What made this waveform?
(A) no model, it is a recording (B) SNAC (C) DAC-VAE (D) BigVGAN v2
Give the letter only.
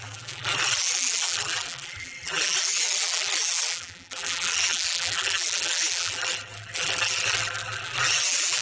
D